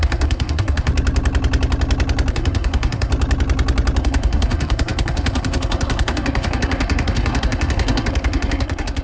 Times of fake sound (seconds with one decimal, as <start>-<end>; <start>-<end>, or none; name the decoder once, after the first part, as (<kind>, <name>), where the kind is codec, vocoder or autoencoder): 0.0-0.9 (codec, SNAC); 2.3-3.1; 4.0-9.0